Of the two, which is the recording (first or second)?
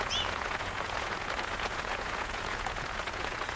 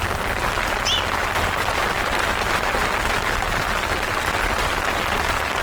second